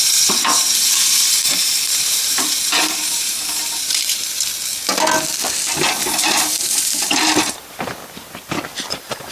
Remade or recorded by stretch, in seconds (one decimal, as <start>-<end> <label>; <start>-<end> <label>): 0.0-4.3 remade; 4.3-5.8 recorded; 5.8-8.0 remade; 8.0-8.9 recorded; 8.9-9.3 remade